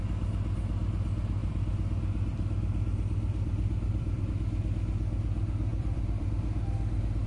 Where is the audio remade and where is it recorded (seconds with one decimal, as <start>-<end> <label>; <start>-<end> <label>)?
0.0-1.4 recorded; 1.4-4.2 remade; 4.2-5.7 recorded; 5.7-6.3 remade; 6.3-7.3 recorded